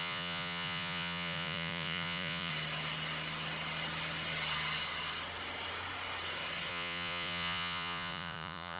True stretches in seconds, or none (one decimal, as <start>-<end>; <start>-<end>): 2.5-6.7